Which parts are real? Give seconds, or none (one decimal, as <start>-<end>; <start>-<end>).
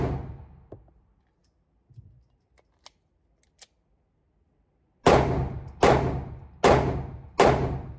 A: 0.0-8.0